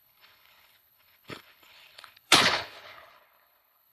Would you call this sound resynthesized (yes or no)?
yes